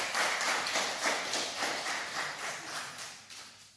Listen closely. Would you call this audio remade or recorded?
recorded